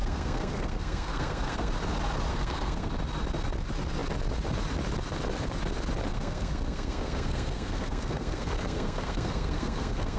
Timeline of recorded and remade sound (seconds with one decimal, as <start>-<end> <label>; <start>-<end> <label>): 0.0-1.7 remade; 1.7-2.3 recorded; 2.3-2.9 remade; 2.9-6.1 recorded; 6.1-10.2 remade

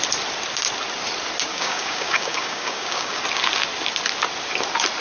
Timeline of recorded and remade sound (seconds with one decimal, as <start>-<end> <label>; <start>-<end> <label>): 0.0-1.5 recorded; 1.5-3.2 remade; 3.2-5.0 recorded

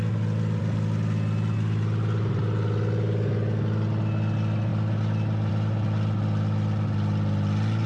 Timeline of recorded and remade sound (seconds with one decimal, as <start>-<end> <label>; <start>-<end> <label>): 0.0-7.9 recorded

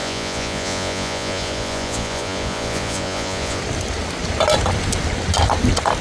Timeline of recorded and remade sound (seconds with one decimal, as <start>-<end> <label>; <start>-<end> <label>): 0.0-3.6 remade; 3.6-6.0 recorded

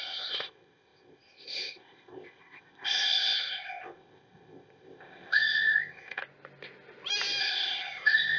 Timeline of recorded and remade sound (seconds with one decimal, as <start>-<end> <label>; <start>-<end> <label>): 0.0-6.2 remade; 6.2-7.4 recorded; 7.4-8.4 remade

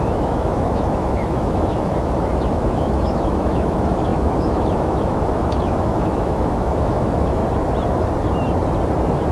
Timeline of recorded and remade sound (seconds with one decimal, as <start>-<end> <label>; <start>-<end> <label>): 0.0-7.4 remade; 7.4-9.3 recorded